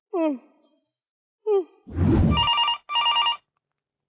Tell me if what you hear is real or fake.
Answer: real